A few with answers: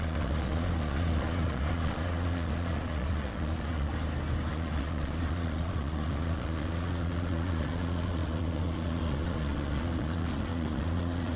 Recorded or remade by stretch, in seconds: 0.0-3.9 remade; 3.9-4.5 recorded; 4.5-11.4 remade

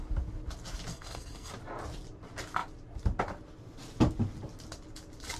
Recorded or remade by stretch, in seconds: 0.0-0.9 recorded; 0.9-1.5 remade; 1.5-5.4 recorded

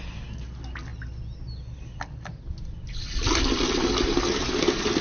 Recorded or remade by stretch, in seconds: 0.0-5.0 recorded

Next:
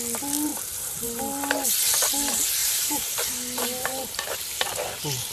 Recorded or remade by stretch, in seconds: 0.0-0.5 recorded; 0.5-1.2 remade; 1.2-2.6 recorded; 2.6-4.4 remade; 4.4-5.3 recorded

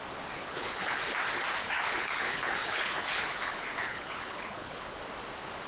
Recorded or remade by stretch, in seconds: 0.0-0.4 recorded; 0.4-1.0 remade; 1.0-1.6 recorded; 1.6-5.0 remade; 5.0-5.7 recorded